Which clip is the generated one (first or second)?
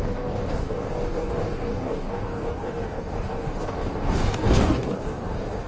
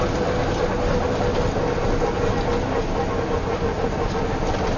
first